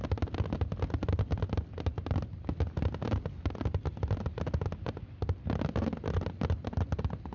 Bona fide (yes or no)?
yes